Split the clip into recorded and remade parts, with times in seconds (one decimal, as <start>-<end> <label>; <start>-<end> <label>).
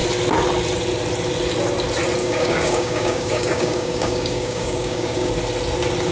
0.0-2.2 recorded; 2.2-5.3 remade; 5.3-6.1 recorded